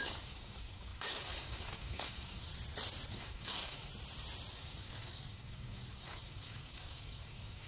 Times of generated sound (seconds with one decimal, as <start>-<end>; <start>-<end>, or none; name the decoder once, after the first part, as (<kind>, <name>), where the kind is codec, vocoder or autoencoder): 0.0-2.5 (codec, DAC); 3.1-3.9; 4.5-7.7